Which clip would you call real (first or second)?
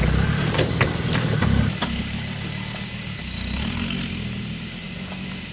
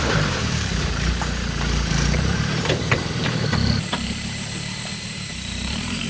first